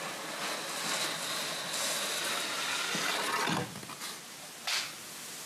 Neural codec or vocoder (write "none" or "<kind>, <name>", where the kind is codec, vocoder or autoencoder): none